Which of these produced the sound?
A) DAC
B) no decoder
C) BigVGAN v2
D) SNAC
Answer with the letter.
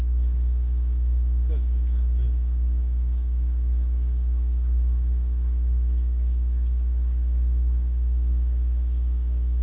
A